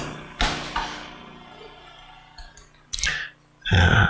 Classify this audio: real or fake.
real